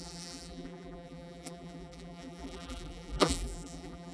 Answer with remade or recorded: remade